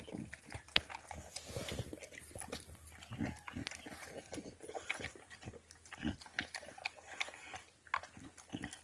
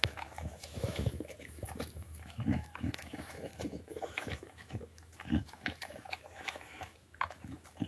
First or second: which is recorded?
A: first